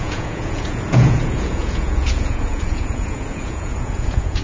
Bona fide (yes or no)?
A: no